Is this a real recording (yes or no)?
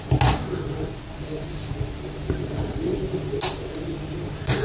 yes